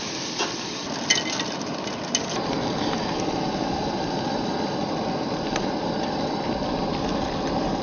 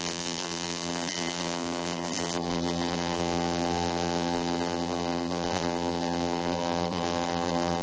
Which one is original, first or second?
first